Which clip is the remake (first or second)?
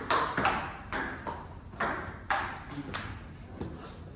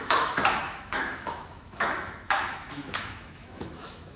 second